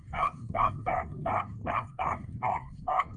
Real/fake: fake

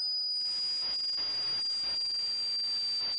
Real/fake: real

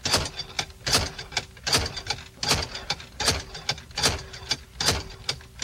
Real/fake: real